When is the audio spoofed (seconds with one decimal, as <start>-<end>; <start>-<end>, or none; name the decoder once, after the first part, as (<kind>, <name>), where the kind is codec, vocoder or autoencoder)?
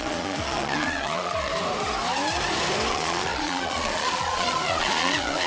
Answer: 0.0-1.5 (vocoder, Vocos); 2.9-5.5